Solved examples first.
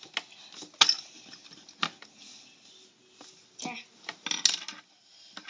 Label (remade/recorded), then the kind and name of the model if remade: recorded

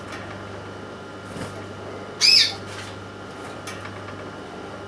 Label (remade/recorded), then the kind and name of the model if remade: recorded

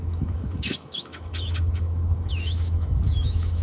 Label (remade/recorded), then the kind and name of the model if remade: remade, autoencoder, DAC-VAE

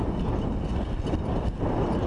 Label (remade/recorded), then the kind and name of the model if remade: recorded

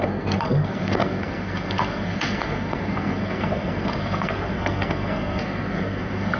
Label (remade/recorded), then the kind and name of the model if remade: remade, codec, SNAC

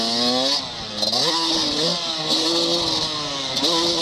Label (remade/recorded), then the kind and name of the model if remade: recorded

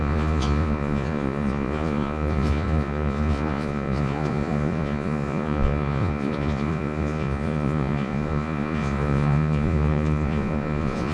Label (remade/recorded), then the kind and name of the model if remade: remade, vocoder, Vocos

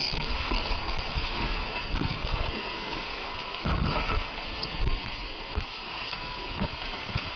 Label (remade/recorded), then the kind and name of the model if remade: remade, codec, SNAC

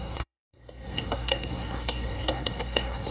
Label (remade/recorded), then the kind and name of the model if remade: remade, codec, SNAC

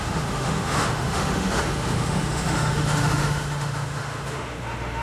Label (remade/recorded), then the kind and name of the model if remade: remade, autoencoder, DAC-VAE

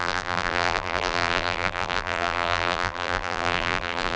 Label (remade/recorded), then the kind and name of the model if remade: remade, vocoder, BigVGAN v2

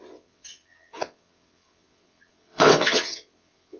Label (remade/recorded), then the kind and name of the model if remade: remade, vocoder, WaveNeXt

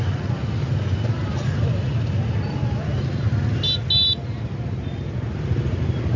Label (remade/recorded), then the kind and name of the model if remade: recorded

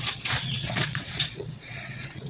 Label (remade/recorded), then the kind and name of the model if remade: remade, vocoder, Vocos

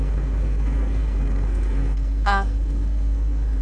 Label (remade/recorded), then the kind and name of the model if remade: remade, codec, SNAC